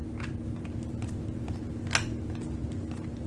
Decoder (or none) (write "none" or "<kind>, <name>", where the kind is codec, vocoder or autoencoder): none